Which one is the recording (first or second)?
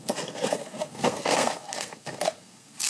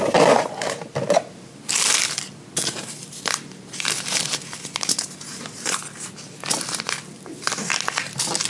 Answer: second